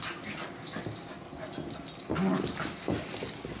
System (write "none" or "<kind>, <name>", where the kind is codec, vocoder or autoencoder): none